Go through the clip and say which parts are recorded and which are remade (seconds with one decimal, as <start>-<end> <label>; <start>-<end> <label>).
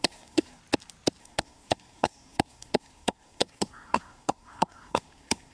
0.0-0.6 remade; 0.6-1.2 recorded; 1.2-5.5 remade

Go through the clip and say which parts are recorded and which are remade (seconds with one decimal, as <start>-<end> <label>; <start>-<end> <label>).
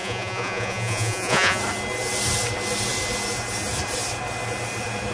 0.0-1.6 remade; 1.6-5.1 recorded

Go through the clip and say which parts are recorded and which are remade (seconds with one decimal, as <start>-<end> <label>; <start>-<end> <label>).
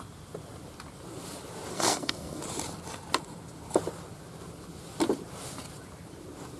0.0-1.7 recorded; 1.7-2.4 remade; 2.4-6.6 recorded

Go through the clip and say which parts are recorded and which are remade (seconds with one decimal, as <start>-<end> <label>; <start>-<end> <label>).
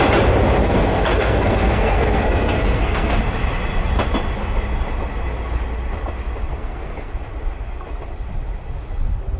0.0-0.6 recorded; 0.6-3.2 remade; 3.2-6.5 recorded; 6.5-7.1 remade; 7.1-9.4 recorded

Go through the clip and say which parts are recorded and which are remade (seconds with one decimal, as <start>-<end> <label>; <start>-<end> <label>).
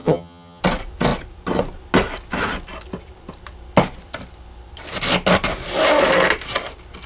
0.0-0.6 remade; 0.6-7.1 recorded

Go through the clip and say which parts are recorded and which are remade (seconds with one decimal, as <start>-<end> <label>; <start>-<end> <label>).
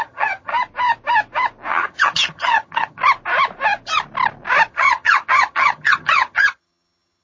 0.0-0.5 remade; 0.5-1.7 recorded; 1.7-3.0 remade; 3.0-4.7 recorded; 4.7-7.2 remade